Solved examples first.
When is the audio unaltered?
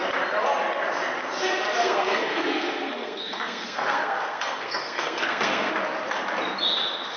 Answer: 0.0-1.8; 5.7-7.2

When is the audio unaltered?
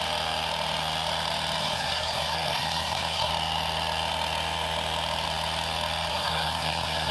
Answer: 0.0-1.6; 3.3-6.1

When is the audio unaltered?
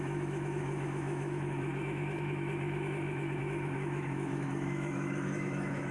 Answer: none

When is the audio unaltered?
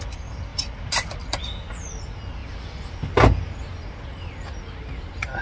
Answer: 0.0-0.5; 2.0-2.4; 2.9-5.4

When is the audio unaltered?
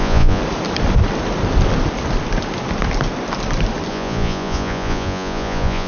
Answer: 0.4-3.9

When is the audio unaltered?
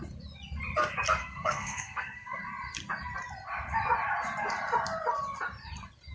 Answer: 0.0-1.2; 2.4-6.1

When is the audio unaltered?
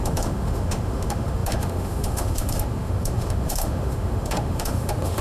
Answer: none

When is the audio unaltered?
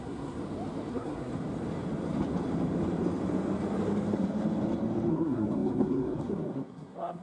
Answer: 0.4-0.9; 1.3-5.1